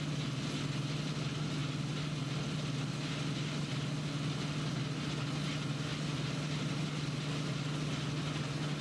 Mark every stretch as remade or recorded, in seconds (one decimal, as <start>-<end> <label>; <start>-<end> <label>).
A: 0.0-8.8 recorded